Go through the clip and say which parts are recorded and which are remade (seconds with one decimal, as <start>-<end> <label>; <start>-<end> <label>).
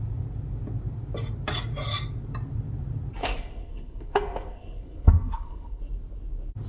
0.0-3.2 recorded; 3.2-5.8 remade; 5.8-6.7 recorded